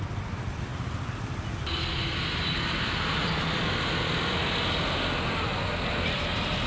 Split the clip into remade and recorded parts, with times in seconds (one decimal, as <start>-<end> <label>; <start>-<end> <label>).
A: 0.0-6.7 recorded